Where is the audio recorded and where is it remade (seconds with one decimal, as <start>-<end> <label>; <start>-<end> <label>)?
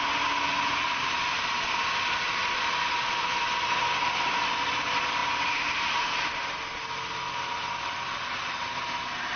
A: 0.0-9.4 recorded